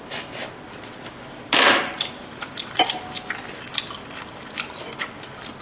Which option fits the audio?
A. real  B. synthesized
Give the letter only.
A